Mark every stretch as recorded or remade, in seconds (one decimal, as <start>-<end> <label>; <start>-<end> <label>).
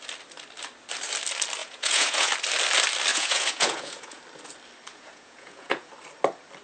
0.0-1.6 recorded; 1.6-2.3 remade; 2.3-3.1 recorded; 3.1-4.2 remade; 4.2-4.9 recorded; 4.9-5.9 remade; 5.9-6.6 recorded